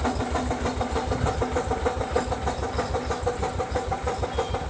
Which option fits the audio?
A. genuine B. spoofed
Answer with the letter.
A